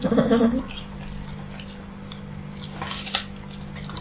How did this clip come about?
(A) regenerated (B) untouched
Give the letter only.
B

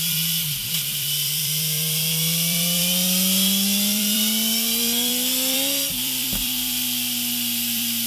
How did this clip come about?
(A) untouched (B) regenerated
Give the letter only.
B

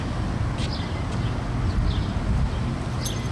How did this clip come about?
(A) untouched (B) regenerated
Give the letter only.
A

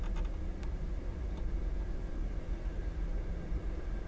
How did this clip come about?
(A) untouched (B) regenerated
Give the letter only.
A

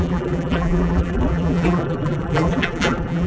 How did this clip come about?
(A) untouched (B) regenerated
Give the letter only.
B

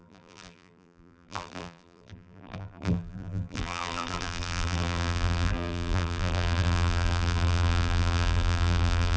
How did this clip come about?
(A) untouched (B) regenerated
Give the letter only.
B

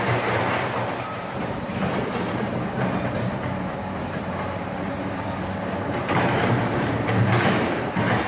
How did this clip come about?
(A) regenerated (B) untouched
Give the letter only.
A